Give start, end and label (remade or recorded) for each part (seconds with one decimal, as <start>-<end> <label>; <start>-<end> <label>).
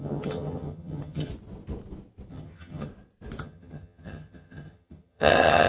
0.0-1.3 remade; 1.3-2.3 recorded; 2.3-2.9 remade; 2.9-3.4 recorded; 3.4-5.7 remade